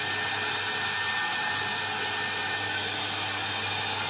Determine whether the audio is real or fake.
real